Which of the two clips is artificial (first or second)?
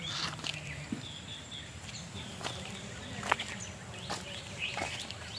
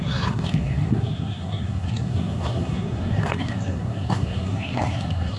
second